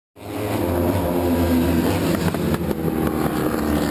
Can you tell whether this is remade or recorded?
recorded